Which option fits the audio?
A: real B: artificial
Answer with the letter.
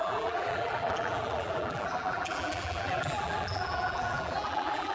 B